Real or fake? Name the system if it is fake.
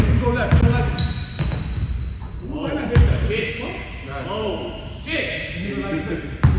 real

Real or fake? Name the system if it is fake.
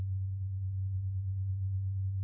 real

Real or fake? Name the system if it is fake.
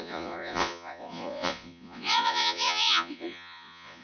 fake, vocoder, Vocos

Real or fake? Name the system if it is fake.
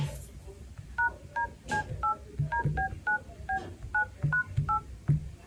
real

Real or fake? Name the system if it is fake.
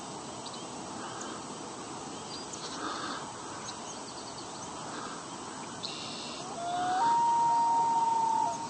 real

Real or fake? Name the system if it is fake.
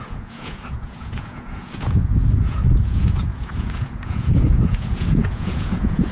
fake, vocoder, Vocos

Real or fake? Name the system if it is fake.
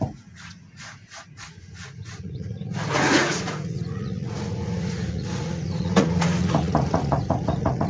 fake, vocoder, Vocos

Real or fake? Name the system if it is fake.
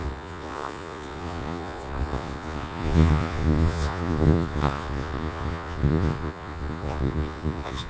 fake, vocoder, Vocos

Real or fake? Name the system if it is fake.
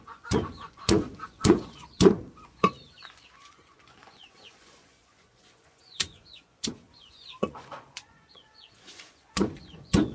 fake, vocoder, Vocos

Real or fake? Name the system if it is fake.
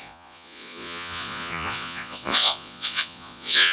fake, vocoder, Vocos